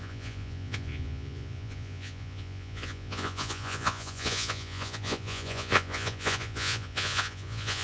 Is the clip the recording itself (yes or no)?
no